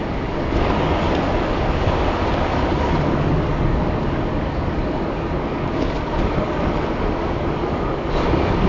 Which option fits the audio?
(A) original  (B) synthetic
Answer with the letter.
B